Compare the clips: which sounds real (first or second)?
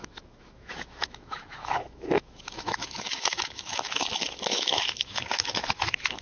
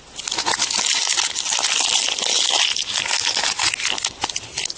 second